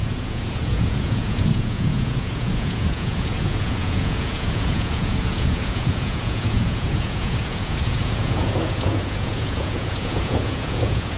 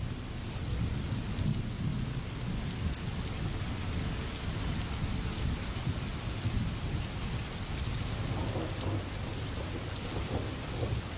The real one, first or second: second